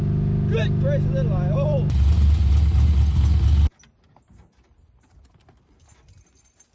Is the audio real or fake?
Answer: real